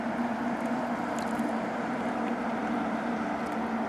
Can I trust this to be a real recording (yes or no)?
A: yes